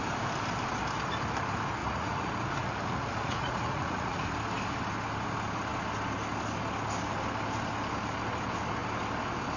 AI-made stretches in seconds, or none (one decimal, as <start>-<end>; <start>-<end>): 1.8-4.3

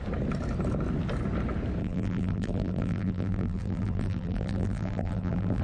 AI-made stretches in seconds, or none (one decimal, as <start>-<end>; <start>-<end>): 1.8-5.6

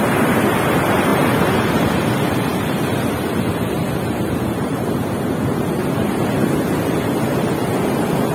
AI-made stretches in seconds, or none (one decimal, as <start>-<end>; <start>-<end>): none

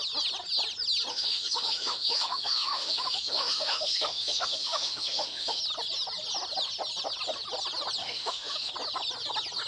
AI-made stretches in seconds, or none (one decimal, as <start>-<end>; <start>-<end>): 1.1-5.6; 8.0-8.7

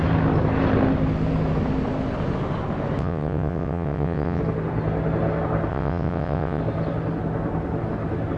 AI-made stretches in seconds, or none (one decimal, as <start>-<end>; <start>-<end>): 3.0-4.4; 5.7-6.6